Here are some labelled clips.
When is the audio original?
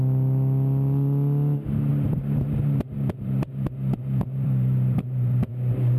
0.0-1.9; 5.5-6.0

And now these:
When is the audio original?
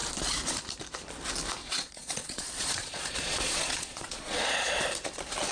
0.0-1.6; 4.9-5.5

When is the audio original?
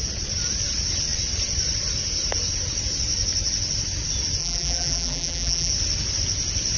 0.0-4.4; 5.7-6.8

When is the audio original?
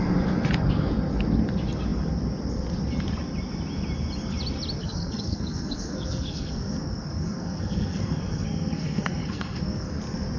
0.0-4.8; 10.0-10.4